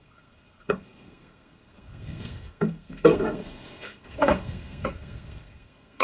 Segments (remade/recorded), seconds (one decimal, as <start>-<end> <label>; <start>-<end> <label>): 0.0-6.0 remade